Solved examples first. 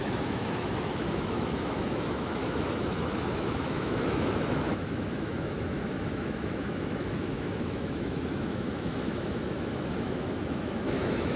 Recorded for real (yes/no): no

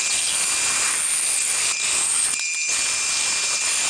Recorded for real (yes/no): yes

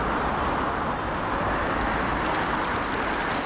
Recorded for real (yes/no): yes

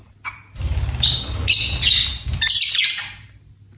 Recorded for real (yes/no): yes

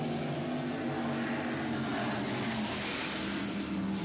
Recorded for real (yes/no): yes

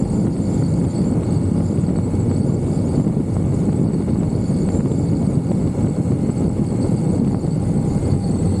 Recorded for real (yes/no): yes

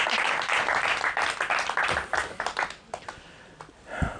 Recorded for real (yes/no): yes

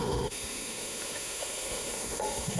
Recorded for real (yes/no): no